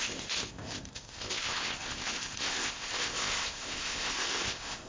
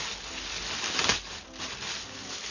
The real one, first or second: second